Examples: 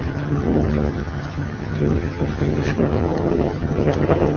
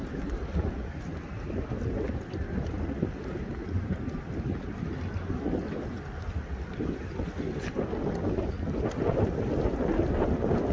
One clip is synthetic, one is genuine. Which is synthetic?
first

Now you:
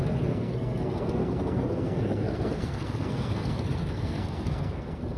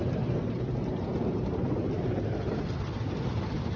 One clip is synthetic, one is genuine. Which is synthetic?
first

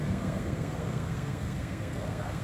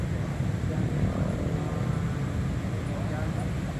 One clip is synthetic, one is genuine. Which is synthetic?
first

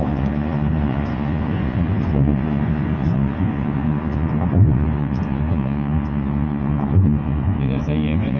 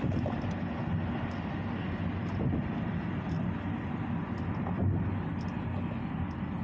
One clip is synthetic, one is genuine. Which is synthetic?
first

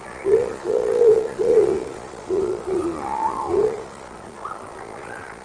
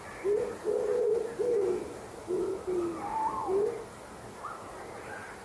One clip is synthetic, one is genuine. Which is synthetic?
first